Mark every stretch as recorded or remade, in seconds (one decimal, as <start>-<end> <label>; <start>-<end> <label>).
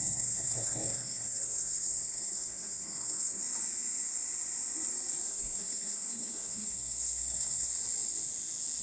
0.0-3.4 remade; 3.4-5.3 recorded; 5.3-7.7 remade; 7.7-8.8 recorded